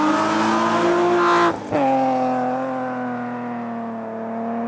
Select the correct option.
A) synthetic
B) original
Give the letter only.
B